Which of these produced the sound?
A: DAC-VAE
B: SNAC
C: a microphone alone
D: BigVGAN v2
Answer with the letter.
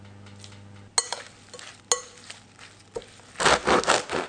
C